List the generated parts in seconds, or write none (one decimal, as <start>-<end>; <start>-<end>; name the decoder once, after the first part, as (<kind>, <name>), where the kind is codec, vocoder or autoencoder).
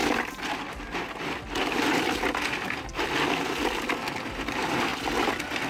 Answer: 0.0-1.4 (vocoder, BigVGAN v2)